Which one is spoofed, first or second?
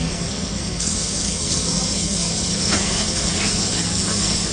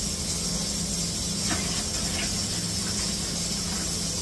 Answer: first